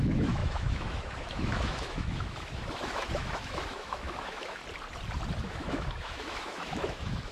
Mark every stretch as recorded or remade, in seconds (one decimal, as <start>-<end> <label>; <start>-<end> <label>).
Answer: 0.0-4.6 remade; 4.6-5.4 recorded; 5.4-7.3 remade